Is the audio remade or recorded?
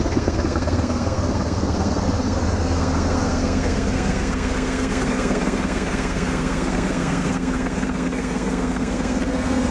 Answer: remade